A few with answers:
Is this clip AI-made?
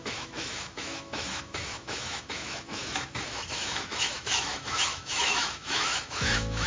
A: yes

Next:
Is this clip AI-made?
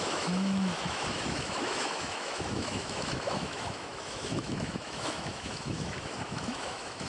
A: yes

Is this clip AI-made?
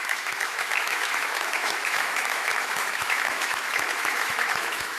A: yes